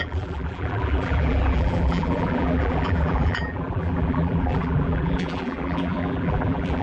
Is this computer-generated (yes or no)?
yes